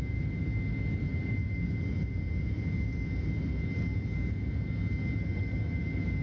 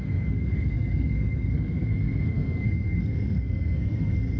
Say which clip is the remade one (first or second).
second